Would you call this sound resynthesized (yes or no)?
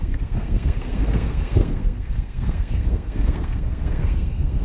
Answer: yes